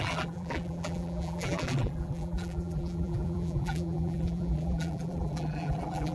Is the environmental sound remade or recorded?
remade